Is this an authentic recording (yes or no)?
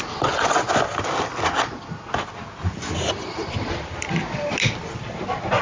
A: yes